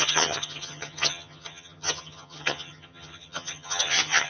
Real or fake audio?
fake